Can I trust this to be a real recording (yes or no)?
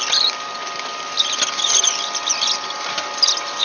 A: yes